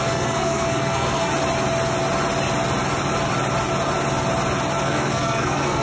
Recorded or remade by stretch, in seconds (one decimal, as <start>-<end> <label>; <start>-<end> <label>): 0.0-1.3 remade; 1.3-4.8 recorded; 4.8-5.8 remade